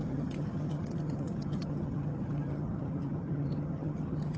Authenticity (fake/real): fake